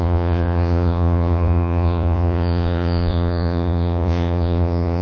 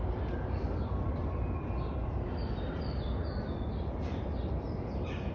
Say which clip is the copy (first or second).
first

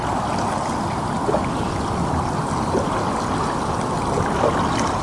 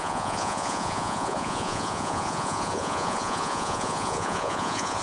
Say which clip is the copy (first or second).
second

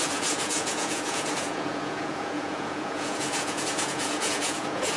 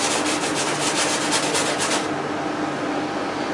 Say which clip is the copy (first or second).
first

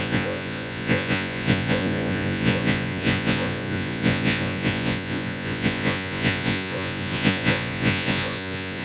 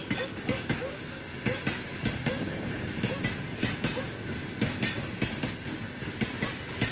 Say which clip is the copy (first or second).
first